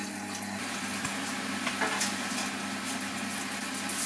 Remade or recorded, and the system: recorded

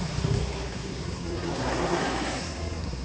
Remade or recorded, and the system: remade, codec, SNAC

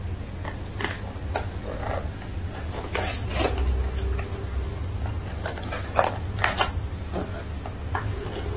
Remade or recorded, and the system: recorded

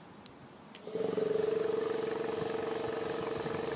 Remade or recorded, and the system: recorded